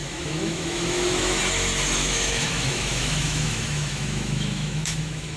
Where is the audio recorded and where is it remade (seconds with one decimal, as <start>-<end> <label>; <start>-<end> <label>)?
0.0-1.4 remade; 1.4-2.0 recorded; 2.0-5.4 remade